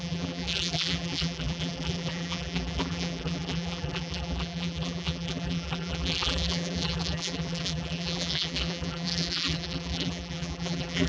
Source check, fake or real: fake